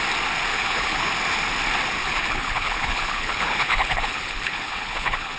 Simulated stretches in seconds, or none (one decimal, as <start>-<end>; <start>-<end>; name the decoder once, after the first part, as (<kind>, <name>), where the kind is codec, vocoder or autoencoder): 0.5-1.1 (codec, HILCodec); 2.0-5.4